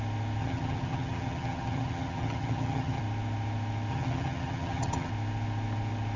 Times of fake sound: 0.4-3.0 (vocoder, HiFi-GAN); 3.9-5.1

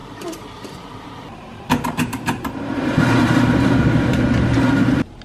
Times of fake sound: 0.0-5.2 (vocoder, BigVGAN v2)

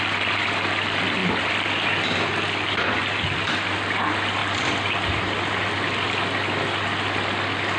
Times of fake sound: 0.0-1.2 (vocoder, BigVGAN v2); 2.9-7.8

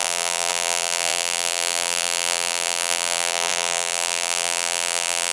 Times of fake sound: 0.0-5.3 (vocoder, BigVGAN v2)

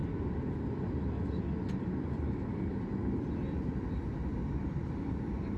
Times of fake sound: none

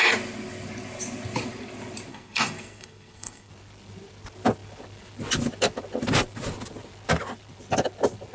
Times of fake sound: 2.1-3.5 (codec, SNAC)

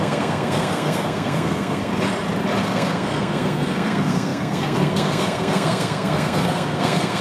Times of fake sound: 0.0-1.9 (codec, SNAC); 2.6-7.2